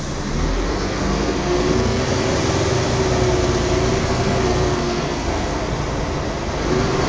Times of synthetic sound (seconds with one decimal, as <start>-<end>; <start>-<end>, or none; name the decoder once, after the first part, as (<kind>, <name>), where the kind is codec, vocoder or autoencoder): 0.7-2.0 (codec, SNAC); 4.0-5.6